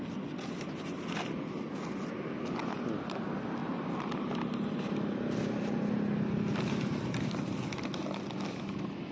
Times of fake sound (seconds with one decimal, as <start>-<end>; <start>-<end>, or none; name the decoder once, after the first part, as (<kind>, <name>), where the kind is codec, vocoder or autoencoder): none